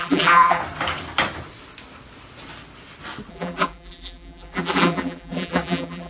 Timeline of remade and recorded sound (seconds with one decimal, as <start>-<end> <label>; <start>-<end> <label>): 0.0-0.6 remade; 0.6-3.3 recorded; 3.3-6.1 remade